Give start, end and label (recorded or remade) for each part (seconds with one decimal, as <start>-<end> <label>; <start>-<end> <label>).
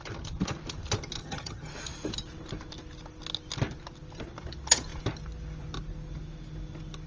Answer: 0.0-1.2 recorded; 1.2-1.7 remade; 1.7-7.1 recorded